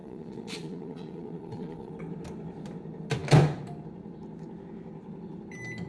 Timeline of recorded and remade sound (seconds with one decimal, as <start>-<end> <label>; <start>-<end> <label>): 0.0-1.9 remade; 1.9-5.9 recorded

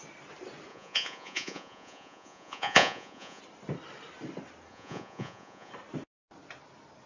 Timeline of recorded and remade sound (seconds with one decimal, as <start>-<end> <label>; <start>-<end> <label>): 0.0-0.7 recorded; 0.7-3.4 remade; 3.4-4.7 recorded; 4.7-5.7 remade; 5.7-7.1 recorded

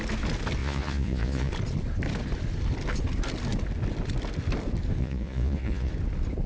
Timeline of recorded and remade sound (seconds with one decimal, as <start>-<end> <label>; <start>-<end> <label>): 0.0-0.6 recorded; 0.6-1.5 remade; 1.5-5.0 recorded; 5.0-5.9 remade; 5.9-6.5 recorded

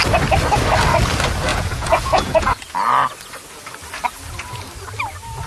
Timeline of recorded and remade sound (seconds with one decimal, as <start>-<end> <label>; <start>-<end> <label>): 0.0-1.5 recorded; 1.5-2.6 remade; 2.6-5.5 recorded

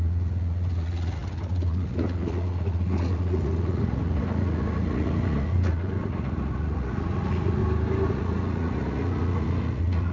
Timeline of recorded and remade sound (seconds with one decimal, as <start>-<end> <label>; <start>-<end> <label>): 0.0-7.6 remade; 7.6-8.1 recorded; 8.1-10.1 remade